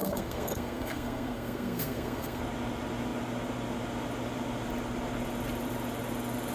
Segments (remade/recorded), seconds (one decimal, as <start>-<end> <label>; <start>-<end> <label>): 0.0-2.4 remade; 2.4-6.5 recorded